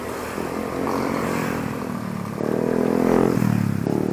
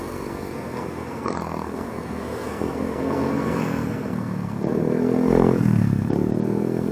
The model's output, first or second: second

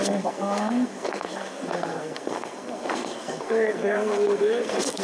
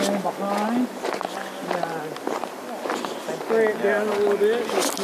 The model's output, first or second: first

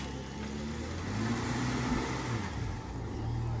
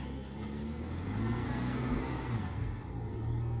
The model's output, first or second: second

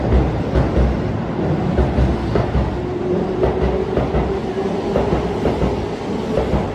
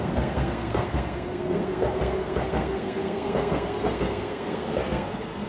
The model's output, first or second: second